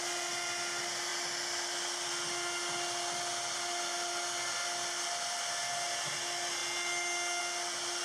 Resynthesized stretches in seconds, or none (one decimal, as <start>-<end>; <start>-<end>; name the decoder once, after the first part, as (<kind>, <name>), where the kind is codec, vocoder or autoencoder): none